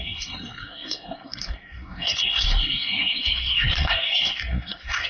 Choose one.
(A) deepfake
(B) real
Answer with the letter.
A